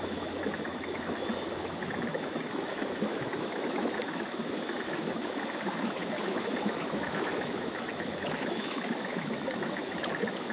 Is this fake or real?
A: fake